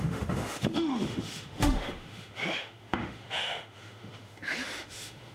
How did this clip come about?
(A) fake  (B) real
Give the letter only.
A